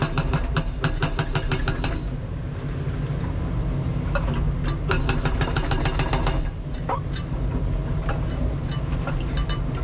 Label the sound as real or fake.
real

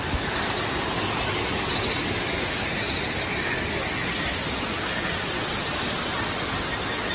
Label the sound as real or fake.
real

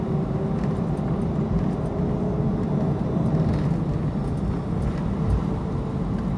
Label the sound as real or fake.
real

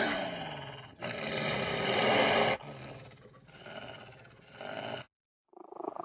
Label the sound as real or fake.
real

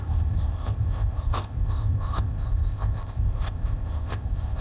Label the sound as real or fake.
fake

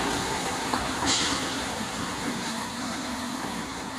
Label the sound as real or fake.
fake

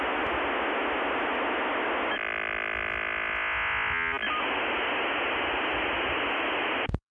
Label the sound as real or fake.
real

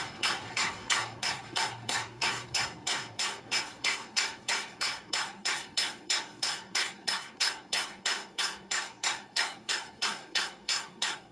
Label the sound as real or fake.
fake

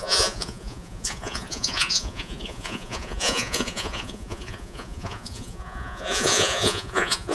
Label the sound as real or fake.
fake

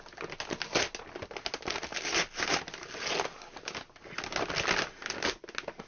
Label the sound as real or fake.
real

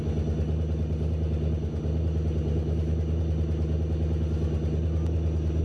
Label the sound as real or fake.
real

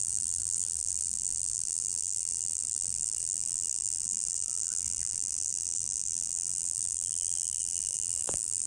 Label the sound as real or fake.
fake